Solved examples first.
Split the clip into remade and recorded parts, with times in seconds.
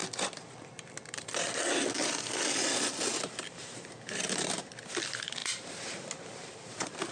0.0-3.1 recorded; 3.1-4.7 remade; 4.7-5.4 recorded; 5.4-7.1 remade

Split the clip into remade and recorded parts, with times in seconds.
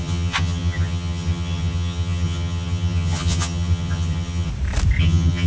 0.0-4.5 remade; 4.5-5.0 recorded; 5.0-5.5 remade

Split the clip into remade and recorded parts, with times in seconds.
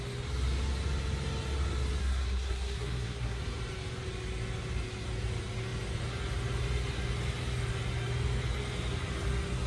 0.0-2.0 recorded; 2.0-3.4 remade; 3.4-9.7 recorded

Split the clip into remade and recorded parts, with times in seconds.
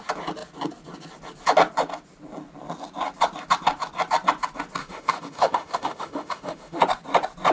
0.0-4.8 recorded; 4.8-6.8 remade; 6.8-7.5 recorded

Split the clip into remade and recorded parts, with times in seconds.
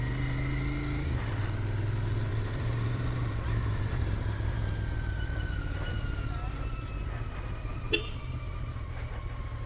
0.0-2.3 recorded; 2.3-4.2 remade; 4.2-7.7 recorded; 7.7-8.3 remade; 8.3-9.7 recorded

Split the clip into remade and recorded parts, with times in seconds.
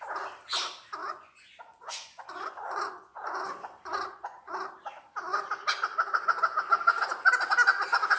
0.0-1.0 recorded; 1.0-4.5 remade; 4.5-8.2 recorded